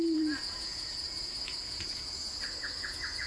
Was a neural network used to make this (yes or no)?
yes